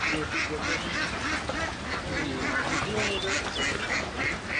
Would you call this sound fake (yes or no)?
no